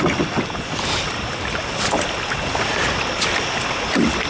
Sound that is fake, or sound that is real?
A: real